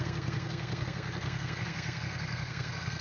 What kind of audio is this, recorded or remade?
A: remade